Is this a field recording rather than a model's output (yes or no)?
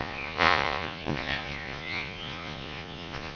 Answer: no